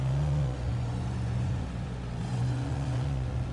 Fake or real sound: fake